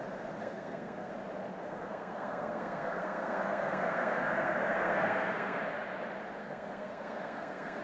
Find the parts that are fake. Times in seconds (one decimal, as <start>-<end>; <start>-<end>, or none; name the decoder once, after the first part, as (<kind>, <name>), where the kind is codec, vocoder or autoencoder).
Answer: 0.4-1.1 (codec, SNAC); 1.6-5.6; 6.4-7.8